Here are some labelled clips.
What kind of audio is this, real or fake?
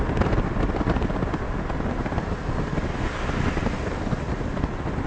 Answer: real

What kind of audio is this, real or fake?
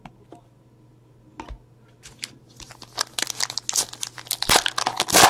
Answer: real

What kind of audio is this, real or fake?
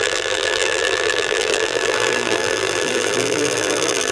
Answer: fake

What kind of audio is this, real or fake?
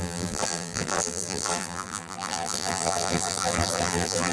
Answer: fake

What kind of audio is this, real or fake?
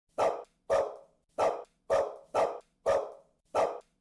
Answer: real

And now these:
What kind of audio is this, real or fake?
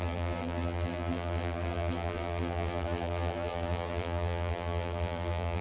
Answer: fake